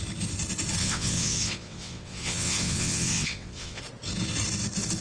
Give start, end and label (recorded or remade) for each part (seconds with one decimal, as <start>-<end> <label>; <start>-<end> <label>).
0.0-0.8 recorded; 0.8-3.8 remade; 3.8-5.0 recorded